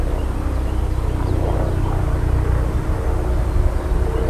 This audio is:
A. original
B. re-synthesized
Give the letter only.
A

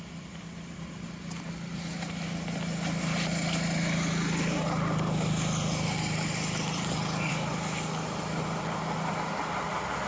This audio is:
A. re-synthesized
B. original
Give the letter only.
B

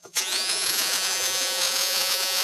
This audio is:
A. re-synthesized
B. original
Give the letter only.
A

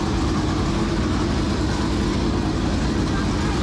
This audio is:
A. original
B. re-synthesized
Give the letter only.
A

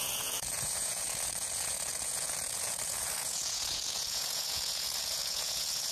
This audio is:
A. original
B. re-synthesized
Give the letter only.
B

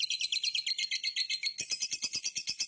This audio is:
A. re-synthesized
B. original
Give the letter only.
B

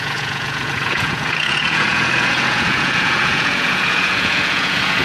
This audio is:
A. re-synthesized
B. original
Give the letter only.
A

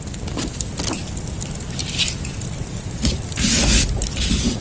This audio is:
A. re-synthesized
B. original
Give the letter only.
B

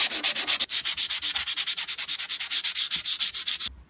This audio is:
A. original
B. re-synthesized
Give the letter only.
A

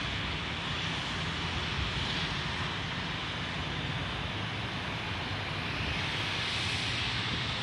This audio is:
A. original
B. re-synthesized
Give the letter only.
A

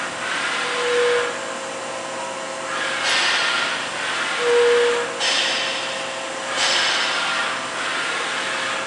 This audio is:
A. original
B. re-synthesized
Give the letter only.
A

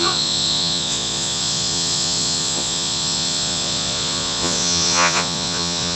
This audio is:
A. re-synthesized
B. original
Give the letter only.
A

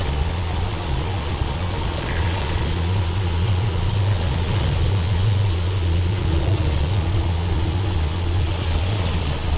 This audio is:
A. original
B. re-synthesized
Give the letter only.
B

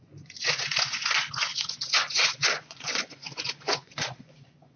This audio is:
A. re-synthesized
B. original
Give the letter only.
A